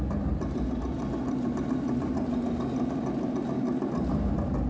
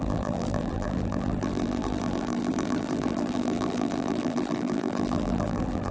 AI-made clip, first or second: second